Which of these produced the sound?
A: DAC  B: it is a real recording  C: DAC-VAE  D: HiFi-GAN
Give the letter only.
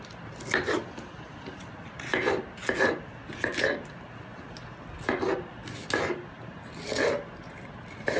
B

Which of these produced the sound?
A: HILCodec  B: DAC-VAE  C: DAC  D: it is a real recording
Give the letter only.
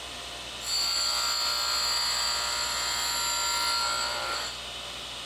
D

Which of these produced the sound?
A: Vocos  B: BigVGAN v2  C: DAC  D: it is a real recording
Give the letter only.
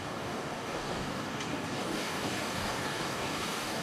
C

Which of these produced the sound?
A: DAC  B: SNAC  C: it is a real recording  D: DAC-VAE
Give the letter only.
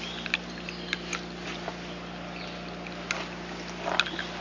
C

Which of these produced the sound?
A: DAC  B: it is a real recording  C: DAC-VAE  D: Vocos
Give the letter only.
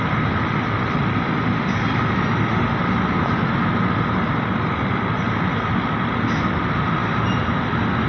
B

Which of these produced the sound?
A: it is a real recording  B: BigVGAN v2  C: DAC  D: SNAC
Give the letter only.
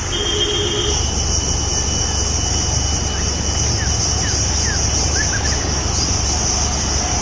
A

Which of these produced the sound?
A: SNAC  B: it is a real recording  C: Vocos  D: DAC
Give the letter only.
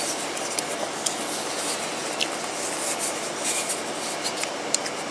B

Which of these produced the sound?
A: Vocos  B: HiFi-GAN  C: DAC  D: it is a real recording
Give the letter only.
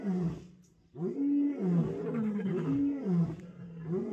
D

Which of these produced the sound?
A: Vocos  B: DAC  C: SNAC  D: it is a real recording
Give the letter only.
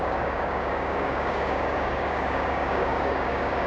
B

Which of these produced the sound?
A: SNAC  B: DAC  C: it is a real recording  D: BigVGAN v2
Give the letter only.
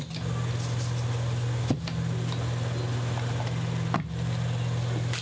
C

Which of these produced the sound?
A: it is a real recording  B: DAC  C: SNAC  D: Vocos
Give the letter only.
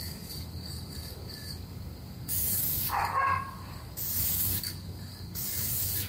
B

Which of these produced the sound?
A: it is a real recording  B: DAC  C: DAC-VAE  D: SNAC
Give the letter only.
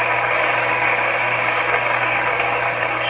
B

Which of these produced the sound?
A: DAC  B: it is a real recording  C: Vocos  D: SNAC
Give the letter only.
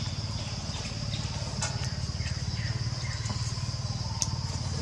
B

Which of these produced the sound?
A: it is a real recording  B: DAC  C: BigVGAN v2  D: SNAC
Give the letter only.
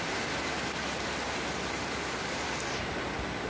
A